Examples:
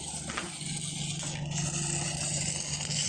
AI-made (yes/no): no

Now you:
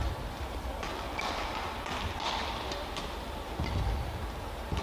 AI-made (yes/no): no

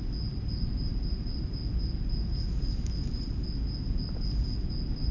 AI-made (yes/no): no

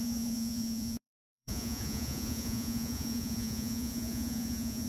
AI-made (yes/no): yes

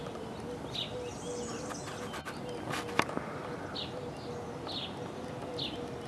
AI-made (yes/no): no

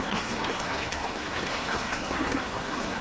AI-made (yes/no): yes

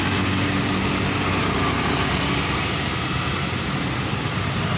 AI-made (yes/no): no